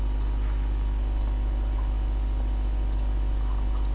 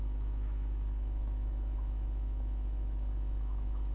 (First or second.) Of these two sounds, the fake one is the second